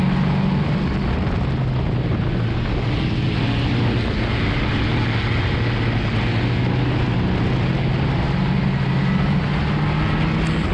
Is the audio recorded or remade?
recorded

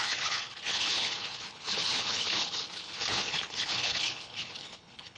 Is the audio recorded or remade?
remade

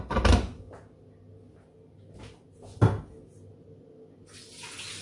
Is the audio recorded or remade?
recorded